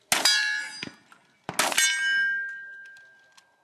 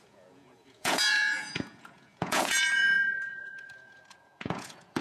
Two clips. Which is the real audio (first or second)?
first